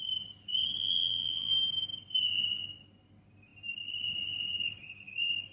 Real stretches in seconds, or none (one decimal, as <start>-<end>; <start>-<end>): 0.0-0.8; 1.5-5.5